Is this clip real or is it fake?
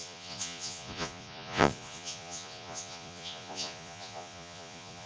fake